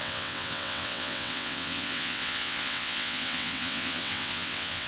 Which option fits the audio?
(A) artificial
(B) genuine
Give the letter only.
A